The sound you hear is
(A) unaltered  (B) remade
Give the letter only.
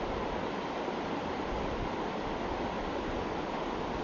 A